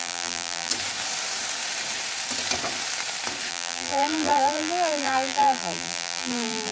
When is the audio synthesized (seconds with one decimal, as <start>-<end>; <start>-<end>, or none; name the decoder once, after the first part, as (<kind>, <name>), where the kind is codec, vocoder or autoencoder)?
0.0-0.7 (vocoder, BigVGAN v2); 3.5-6.7